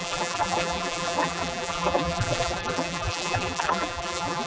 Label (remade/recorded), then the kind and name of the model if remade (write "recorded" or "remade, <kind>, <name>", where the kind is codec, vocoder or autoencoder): remade, vocoder, BigVGAN v2